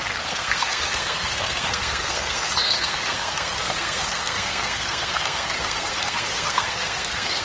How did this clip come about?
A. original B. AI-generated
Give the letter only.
B